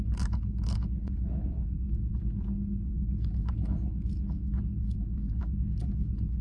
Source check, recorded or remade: remade